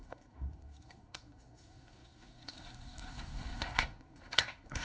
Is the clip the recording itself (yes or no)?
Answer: no